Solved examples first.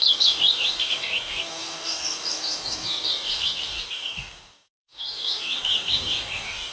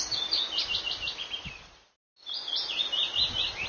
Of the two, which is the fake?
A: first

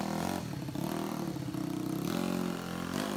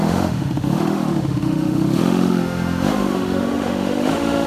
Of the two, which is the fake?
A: second